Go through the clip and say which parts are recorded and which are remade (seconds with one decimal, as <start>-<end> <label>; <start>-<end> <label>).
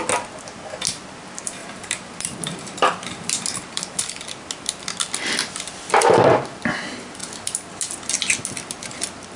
0.0-1.6 recorded; 1.6-4.0 remade; 4.0-9.4 recorded